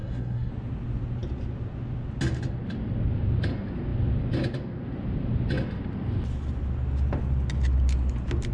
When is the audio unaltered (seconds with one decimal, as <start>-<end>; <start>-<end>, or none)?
0.5-8.5